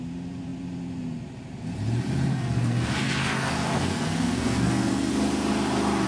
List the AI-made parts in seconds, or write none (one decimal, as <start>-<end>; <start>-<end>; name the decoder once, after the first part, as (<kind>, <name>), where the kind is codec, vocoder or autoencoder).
2.3-5.1 (codec, SNAC)